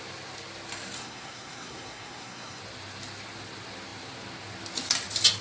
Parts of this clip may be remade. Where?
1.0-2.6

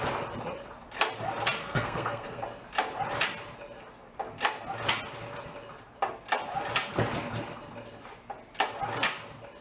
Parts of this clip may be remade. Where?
1.6-2.4

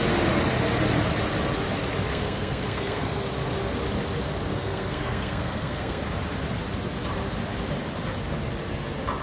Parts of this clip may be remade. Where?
2.1-3.2; 4.5-6.0

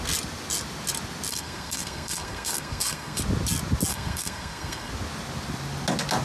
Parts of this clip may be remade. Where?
1.3-3.2; 3.9-4.9

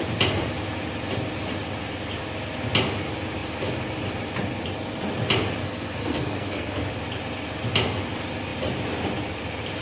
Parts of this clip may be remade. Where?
5.6-6.9

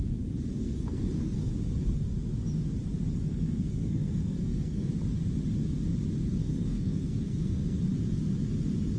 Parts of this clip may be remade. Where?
0.6-1.5; 3.3-4.9; 6.4-7.8

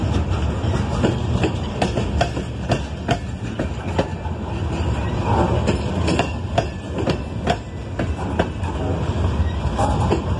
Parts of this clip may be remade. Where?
none